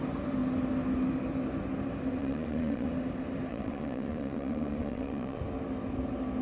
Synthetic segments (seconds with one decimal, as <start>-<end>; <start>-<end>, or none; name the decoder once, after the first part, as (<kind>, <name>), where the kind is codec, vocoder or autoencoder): 2.2-2.9 (vocoder, Vocos); 3.5-5.4